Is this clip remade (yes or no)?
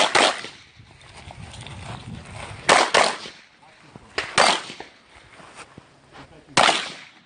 no